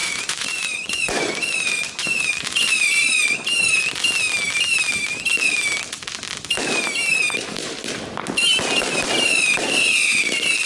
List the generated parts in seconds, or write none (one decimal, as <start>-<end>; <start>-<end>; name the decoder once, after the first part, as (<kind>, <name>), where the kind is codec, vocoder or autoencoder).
0.0-2.7 (vocoder, Vocos)